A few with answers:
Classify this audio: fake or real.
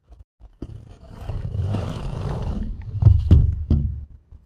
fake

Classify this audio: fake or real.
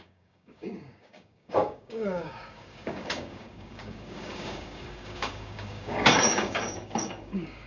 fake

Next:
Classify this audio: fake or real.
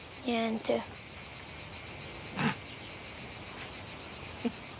real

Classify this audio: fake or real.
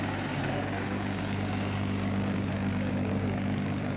fake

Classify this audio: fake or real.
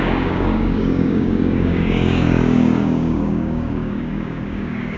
fake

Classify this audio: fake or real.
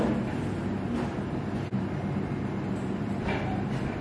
real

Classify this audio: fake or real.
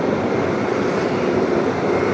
real